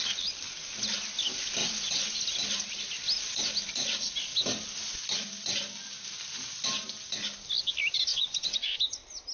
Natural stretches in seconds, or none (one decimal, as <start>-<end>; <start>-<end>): 0.0-1.6; 2.2-8.1; 8.8-9.3